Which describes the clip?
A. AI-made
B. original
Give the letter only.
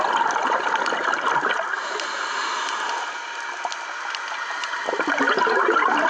B